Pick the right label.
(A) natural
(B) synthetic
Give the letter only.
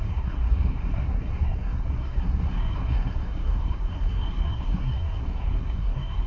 B